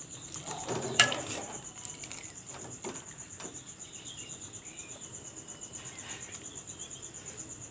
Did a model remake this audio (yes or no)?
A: yes